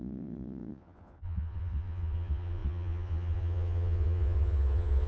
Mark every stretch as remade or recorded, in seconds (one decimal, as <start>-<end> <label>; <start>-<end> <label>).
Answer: 0.0-5.1 remade